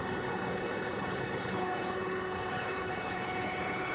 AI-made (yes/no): yes